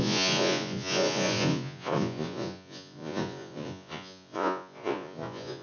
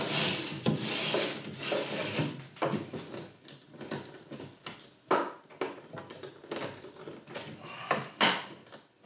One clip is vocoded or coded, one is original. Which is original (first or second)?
second